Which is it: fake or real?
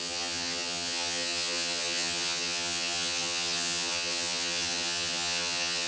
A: fake